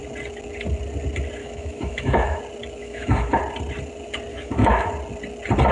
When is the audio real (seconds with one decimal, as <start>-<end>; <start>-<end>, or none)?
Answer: 0.0-1.4; 2.4-2.8; 3.4-4.3; 4.9-5.7